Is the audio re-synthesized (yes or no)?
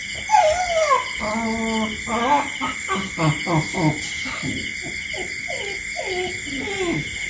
no